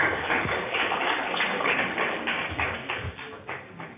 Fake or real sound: fake